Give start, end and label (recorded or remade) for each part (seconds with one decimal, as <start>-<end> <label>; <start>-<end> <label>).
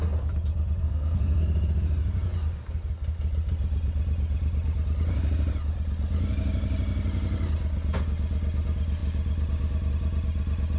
0.0-0.8 recorded; 0.8-1.4 remade; 1.4-10.8 recorded